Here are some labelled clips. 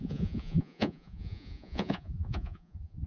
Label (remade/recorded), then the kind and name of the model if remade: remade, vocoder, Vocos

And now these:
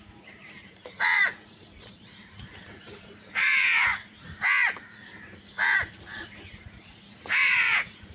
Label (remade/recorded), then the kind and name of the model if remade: remade, vocoder, Vocos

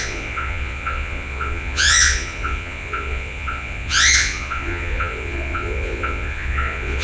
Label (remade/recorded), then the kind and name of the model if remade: remade, vocoder, Vocos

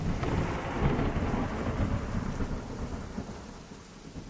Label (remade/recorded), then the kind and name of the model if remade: recorded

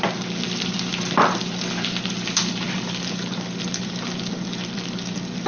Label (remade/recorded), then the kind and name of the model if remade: recorded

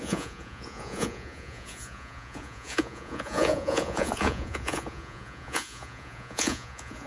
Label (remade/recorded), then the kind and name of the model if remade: remade, vocoder, Vocos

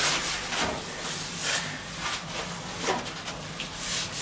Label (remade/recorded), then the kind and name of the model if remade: recorded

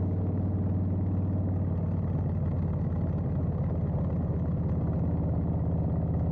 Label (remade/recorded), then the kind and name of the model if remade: recorded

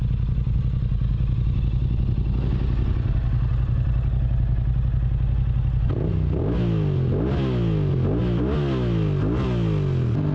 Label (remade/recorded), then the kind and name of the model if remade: recorded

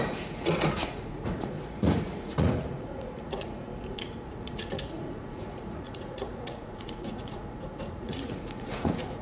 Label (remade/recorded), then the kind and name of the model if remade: remade, vocoder, Vocos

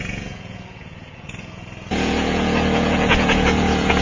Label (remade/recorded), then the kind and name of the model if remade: remade, vocoder, Vocos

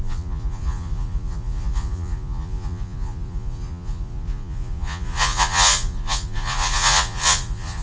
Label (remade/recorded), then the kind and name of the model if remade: remade, vocoder, Vocos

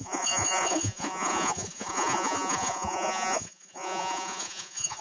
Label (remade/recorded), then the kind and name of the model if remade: remade, vocoder, Vocos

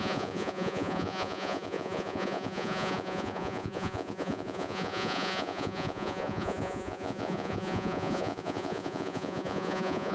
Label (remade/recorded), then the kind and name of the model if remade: remade, vocoder, Vocos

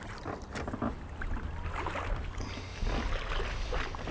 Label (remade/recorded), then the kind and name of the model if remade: recorded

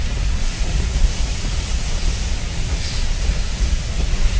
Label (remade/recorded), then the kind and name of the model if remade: remade, vocoder, Vocos